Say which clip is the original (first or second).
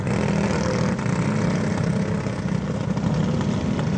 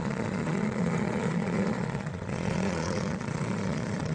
first